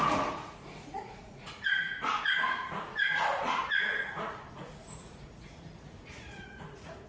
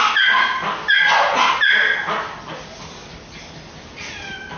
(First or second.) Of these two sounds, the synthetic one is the first